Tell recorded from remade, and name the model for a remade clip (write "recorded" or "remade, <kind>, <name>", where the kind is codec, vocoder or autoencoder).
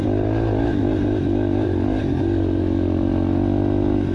recorded